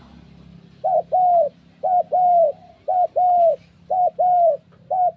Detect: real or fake real